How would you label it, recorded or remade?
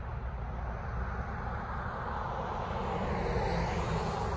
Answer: recorded